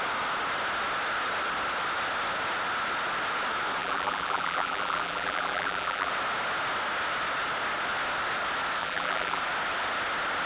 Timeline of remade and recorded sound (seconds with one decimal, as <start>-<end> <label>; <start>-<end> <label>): 0.0-3.8 recorded; 3.8-6.1 remade; 6.1-8.8 recorded; 8.8-9.4 remade; 9.4-10.5 recorded